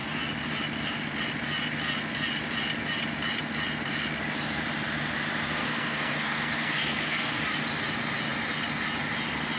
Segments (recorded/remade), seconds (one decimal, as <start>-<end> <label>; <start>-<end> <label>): 0.0-5.6 recorded; 5.6-7.4 remade; 7.4-9.6 recorded